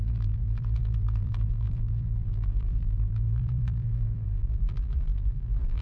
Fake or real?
fake